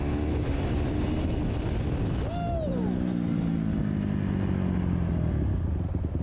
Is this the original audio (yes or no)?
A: yes